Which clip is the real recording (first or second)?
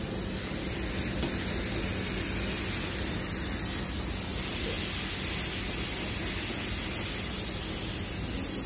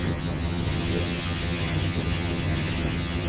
first